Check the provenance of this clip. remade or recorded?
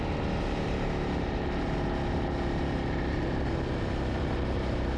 recorded